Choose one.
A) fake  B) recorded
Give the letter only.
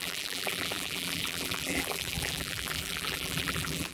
A